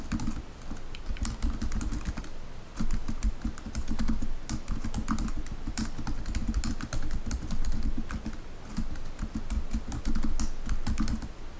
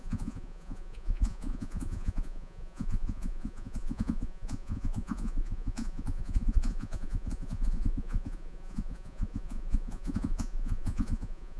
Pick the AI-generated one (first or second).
second